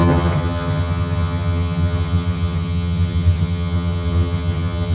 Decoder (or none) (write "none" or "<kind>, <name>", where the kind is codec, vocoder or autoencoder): vocoder, HiFi-GAN